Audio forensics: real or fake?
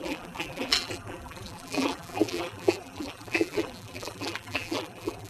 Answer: fake